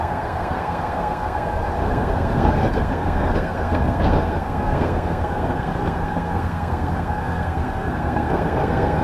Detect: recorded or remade remade